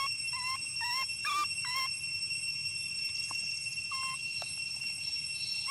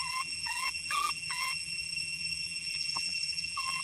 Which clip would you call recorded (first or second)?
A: first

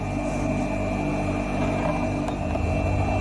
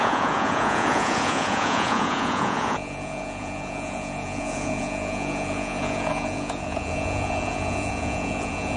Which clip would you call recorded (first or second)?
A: first